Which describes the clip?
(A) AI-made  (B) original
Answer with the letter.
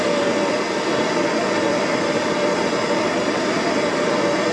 B